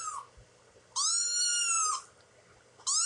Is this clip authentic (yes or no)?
yes